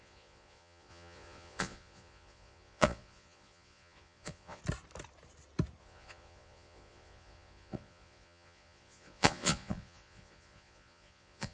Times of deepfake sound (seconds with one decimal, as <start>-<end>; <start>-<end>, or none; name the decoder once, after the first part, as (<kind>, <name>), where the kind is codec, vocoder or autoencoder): 0.0-4.6 (vocoder, Vocos); 5.8-11.5